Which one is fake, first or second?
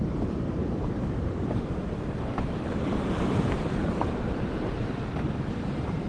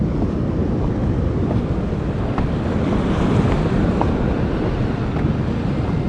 first